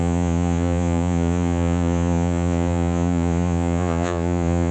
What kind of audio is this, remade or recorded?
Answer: remade